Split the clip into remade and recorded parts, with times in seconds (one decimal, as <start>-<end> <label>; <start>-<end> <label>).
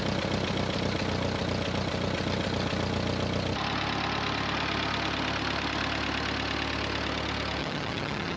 0.0-7.6 recorded; 7.6-8.4 remade